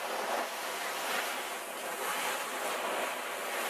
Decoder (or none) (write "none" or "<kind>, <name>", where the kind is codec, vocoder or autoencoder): none